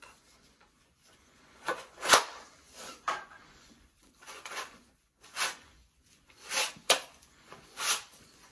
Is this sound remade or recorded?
remade